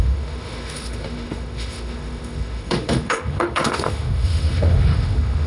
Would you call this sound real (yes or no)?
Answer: no